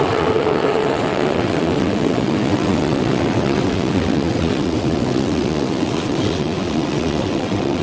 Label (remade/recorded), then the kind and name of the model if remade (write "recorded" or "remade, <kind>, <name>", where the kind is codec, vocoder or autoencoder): remade, vocoder, WaveNeXt